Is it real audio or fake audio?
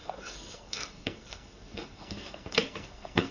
fake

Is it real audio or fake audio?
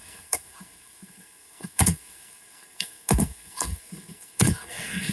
fake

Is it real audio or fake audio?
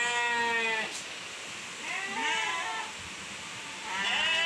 real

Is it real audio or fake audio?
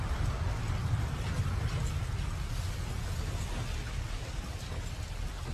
real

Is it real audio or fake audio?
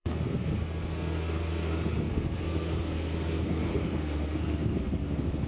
fake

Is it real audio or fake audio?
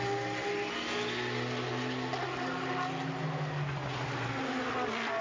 real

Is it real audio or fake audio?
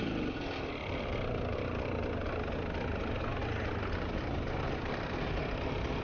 real